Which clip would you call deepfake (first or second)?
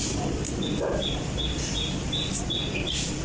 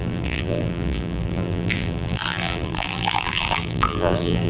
second